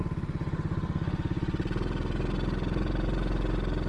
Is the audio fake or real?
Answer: real